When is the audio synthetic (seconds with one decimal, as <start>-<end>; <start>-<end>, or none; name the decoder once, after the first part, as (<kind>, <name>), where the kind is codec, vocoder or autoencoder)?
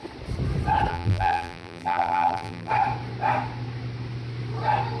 0.9-2.7 (vocoder, BigVGAN v2)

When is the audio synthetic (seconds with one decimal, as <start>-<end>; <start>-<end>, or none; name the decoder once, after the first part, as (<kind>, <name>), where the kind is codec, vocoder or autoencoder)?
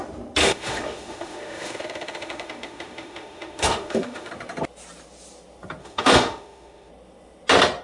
0.4-4.3 (autoencoder, DAC-VAE); 5.8-6.9